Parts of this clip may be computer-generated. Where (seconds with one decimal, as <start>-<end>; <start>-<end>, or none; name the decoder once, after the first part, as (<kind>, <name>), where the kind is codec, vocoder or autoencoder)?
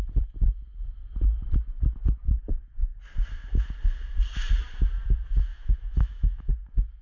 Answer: 5.5-6.5 (autoencoder, DAC-VAE)